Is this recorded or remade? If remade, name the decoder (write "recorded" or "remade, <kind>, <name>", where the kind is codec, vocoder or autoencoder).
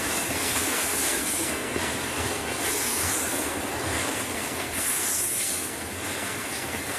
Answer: remade, codec, SNAC